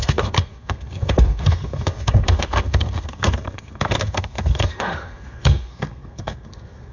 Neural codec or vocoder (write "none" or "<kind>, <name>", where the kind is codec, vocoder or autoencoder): codec, SNAC